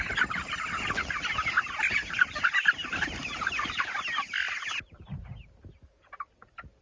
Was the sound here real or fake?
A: real